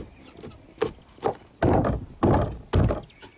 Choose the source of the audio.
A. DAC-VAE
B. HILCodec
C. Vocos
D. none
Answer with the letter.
D